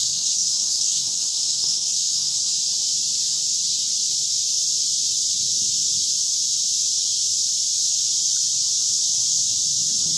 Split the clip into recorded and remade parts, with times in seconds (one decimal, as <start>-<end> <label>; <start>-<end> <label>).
0.0-2.4 remade; 2.4-10.2 recorded